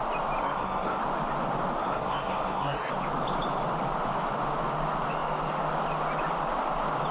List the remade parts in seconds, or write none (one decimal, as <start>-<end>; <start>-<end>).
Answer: 0.4-1.0; 1.8-2.9